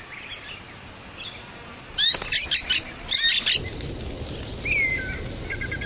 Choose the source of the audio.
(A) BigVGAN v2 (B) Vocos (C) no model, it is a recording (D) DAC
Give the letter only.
C